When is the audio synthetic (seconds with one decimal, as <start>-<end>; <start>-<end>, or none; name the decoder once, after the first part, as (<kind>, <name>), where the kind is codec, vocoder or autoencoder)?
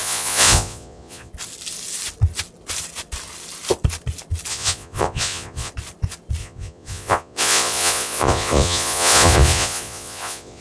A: 0.0-1.3 (vocoder, Vocos); 4.5-5.7; 6.4-10.6